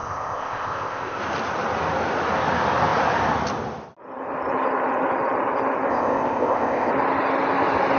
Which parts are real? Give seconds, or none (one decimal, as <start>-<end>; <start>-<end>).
1.2-5.9; 6.9-8.0